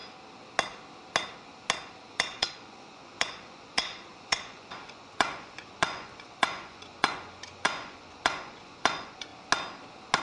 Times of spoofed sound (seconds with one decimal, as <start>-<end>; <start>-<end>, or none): 2.1-9.3